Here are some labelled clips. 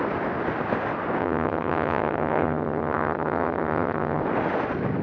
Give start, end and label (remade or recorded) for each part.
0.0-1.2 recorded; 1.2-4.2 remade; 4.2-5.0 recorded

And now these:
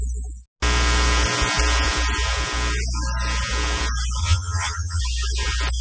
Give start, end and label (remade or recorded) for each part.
0.0-4.2 recorded; 4.2-5.0 remade; 5.0-5.8 recorded

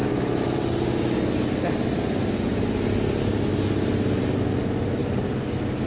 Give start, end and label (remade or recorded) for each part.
0.0-5.9 recorded

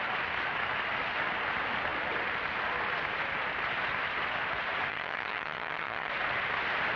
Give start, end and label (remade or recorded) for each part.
0.0-4.9 recorded; 4.9-6.1 remade; 6.1-7.0 recorded

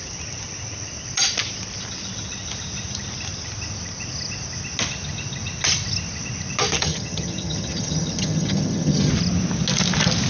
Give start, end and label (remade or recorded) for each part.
0.0-6.8 recorded; 6.8-9.1 remade; 9.1-10.3 recorded

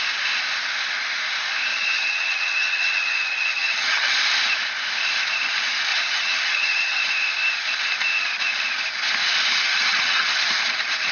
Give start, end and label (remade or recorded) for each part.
0.0-1.7 recorded; 1.7-4.1 remade; 4.1-5.9 recorded; 5.9-7.0 remade; 7.0-9.6 recorded; 9.6-10.3 remade; 10.3-11.1 recorded

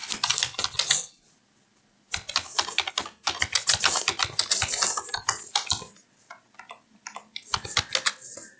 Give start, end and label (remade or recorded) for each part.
0.0-8.6 recorded